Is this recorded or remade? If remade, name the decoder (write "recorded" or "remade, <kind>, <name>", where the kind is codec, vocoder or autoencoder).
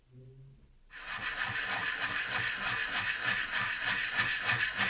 recorded